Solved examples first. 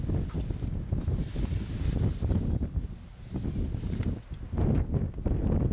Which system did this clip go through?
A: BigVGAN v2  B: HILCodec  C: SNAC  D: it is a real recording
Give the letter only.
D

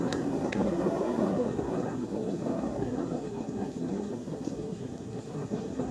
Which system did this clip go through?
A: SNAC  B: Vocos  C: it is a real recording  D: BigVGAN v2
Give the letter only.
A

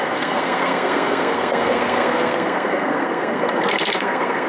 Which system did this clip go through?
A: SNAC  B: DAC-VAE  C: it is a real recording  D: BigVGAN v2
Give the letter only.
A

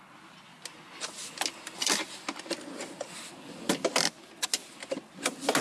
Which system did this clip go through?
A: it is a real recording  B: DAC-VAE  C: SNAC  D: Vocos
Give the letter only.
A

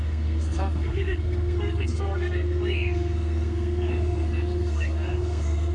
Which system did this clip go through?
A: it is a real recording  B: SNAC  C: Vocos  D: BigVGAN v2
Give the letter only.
B